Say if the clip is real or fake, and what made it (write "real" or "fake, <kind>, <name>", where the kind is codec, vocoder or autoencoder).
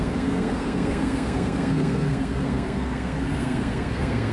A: fake, codec, SNAC